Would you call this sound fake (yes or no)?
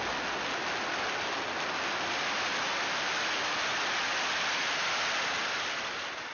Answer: no